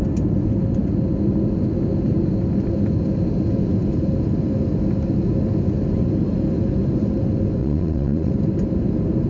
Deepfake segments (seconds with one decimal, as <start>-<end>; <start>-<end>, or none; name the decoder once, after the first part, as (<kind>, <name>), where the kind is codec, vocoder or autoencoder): 7.6-8.3 (vocoder, Vocos)